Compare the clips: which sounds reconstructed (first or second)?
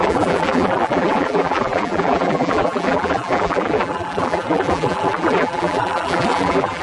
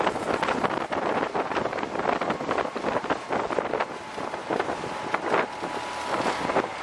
first